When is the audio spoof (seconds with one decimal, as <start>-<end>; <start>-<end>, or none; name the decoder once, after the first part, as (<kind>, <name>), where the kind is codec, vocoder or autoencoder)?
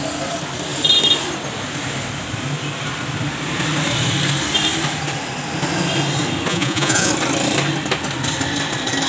6.5-7.1 (vocoder, Vocos)